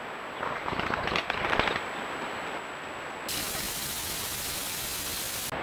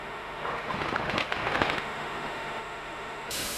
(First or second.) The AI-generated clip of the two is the second